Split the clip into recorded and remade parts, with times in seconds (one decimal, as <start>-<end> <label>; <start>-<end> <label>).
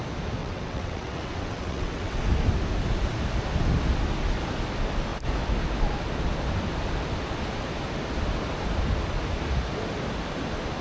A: 0.0-0.4 recorded; 0.4-2.2 remade; 2.2-10.8 recorded